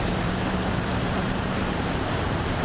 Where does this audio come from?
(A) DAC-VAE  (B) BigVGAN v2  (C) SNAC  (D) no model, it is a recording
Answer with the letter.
B